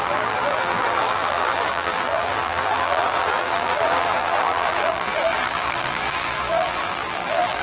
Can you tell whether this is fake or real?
fake